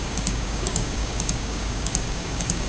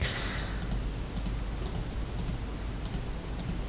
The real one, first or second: second